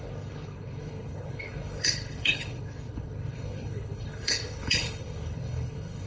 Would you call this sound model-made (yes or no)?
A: yes